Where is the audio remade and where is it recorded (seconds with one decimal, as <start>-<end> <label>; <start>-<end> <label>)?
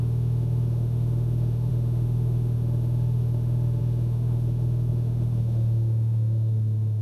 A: 0.0-7.0 remade